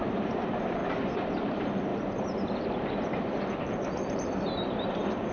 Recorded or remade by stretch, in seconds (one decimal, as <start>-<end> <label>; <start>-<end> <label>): 0.0-0.8 remade; 0.8-1.5 recorded; 1.5-1.9 remade; 1.9-3.6 recorded; 3.6-5.3 remade